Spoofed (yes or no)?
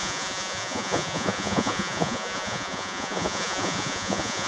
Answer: yes